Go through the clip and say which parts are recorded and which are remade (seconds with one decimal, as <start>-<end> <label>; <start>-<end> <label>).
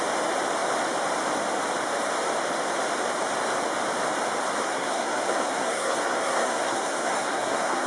0.0-4.6 recorded; 4.6-7.9 remade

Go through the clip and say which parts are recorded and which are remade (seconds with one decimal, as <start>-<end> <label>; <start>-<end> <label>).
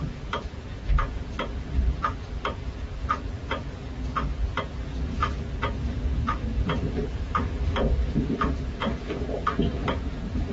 0.0-10.5 remade